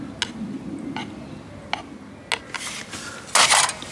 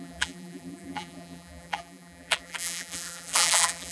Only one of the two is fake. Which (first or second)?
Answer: second